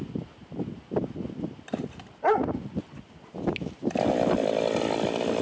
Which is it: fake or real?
real